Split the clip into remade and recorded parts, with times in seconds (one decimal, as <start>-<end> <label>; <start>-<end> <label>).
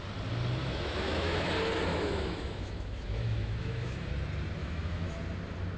0.0-0.6 recorded; 0.6-1.5 remade; 1.5-1.9 recorded; 1.9-4.1 remade; 4.1-4.6 recorded; 4.6-5.1 remade; 5.1-5.8 recorded